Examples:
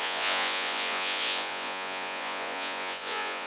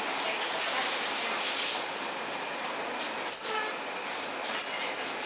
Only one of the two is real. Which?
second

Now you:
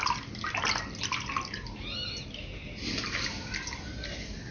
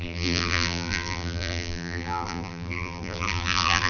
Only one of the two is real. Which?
first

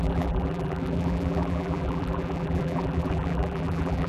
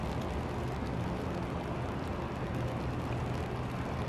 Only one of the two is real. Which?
second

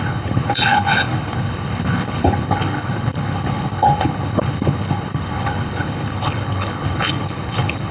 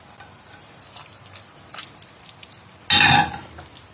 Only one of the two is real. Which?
second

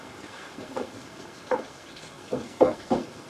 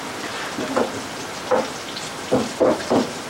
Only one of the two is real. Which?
second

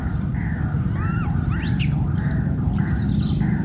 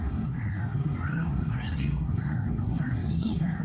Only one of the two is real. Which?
first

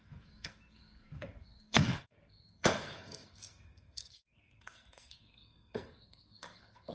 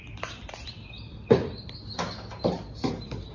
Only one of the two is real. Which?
second